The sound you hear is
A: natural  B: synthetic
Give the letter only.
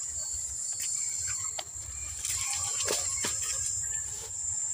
B